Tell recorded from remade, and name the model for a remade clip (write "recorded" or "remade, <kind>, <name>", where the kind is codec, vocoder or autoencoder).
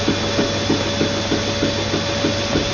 recorded